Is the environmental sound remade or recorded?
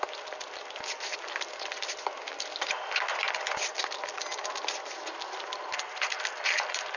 recorded